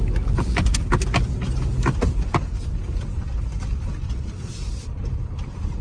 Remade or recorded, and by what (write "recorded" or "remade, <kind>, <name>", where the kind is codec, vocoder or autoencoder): recorded